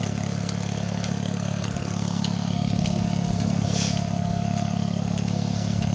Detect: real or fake fake